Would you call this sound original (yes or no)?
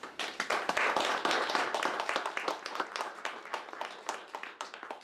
no